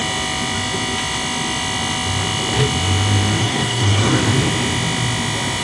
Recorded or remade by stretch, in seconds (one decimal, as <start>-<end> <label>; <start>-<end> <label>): 0.0-3.4 recorded; 3.4-4.1 remade; 4.1-5.6 recorded